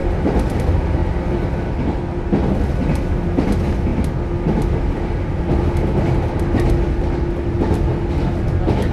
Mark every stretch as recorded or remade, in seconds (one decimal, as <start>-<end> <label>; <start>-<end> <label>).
0.0-8.9 recorded